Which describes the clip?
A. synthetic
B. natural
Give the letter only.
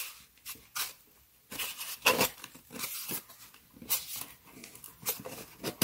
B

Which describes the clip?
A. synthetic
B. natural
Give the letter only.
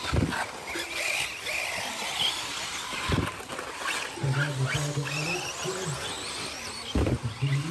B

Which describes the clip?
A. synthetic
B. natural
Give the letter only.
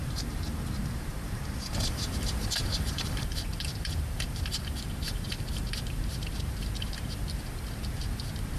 A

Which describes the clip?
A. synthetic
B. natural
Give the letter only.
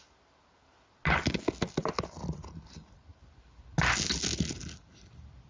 B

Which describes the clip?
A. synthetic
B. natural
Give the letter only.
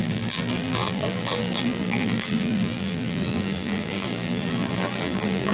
A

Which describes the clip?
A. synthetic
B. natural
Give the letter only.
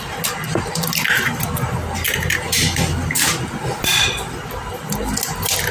B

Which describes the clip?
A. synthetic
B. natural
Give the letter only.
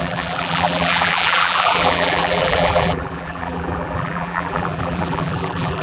A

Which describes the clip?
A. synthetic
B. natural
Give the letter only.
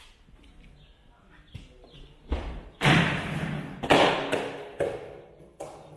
B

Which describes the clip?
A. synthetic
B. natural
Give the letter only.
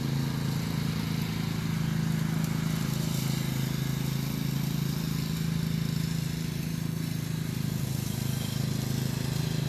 B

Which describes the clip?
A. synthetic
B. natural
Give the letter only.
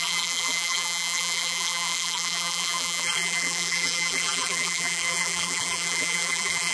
A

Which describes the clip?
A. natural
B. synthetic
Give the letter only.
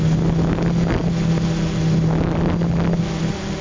A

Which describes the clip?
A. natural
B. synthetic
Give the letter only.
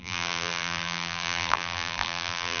B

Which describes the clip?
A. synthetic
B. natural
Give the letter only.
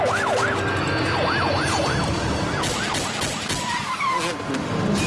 B